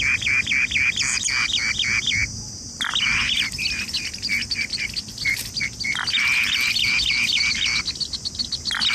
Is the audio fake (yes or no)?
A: no